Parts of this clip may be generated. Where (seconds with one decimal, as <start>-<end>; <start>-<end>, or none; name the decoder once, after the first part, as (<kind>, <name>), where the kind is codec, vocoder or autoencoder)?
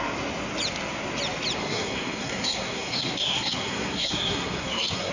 1.6-5.1 (codec, SNAC)